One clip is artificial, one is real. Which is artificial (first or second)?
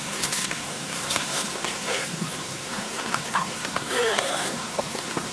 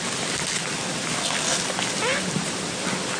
first